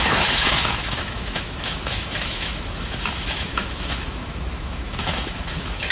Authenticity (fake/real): fake